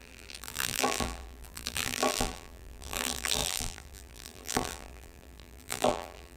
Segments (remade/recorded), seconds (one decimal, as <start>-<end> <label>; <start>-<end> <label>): 0.0-6.4 remade